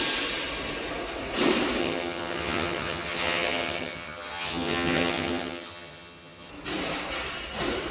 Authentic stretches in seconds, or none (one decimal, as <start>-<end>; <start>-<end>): 0.0-1.8; 6.5-7.9